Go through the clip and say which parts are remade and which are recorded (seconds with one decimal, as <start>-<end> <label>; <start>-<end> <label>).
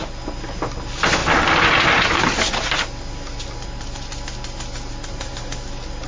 0.0-6.1 recorded